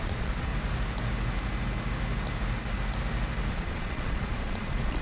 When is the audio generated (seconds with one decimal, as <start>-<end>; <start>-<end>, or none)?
0.0-0.5; 3.5-5.0